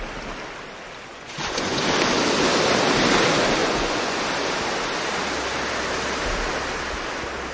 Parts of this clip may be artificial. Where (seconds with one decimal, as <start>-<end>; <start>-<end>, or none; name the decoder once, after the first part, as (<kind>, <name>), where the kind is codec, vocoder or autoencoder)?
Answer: 1.1-1.8 (vocoder, Vocos); 3.6-4.2